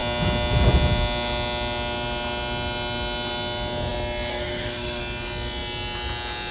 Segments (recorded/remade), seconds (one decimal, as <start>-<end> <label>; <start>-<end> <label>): 0.0-4.3 recorded; 4.3-5.0 remade; 5.0-6.5 recorded